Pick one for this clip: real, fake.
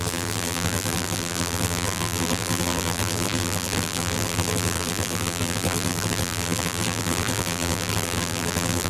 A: fake